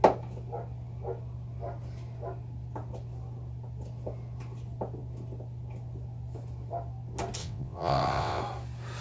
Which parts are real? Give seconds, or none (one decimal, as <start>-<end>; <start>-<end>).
0.0-7.4; 8.4-9.0